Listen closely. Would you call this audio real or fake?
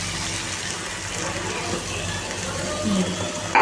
real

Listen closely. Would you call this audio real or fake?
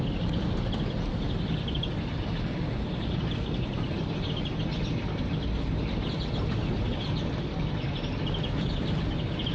real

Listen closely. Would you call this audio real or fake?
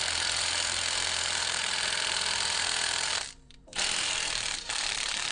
fake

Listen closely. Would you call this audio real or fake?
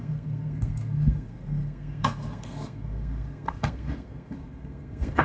fake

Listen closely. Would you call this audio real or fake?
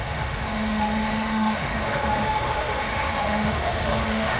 fake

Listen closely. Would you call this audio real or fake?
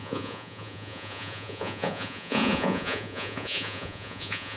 fake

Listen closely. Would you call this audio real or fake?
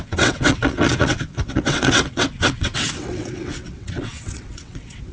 fake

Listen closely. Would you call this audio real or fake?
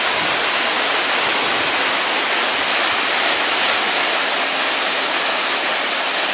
real